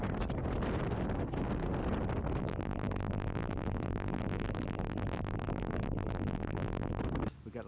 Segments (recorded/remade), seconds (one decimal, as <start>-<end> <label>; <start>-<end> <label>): 0.0-2.4 recorded; 2.4-7.0 remade; 7.0-7.7 recorded